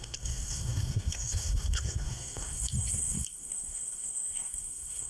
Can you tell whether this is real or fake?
fake